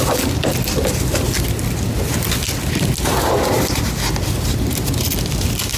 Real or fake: fake